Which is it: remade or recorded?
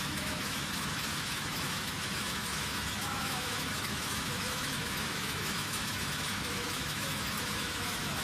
remade